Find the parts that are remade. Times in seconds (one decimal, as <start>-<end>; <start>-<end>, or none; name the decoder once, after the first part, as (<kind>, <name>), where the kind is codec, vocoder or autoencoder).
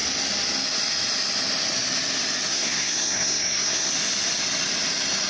2.5-3.9 (codec, SNAC)